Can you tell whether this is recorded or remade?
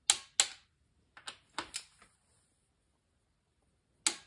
recorded